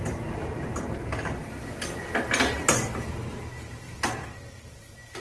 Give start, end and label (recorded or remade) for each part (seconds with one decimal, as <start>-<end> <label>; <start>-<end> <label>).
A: 0.0-5.2 recorded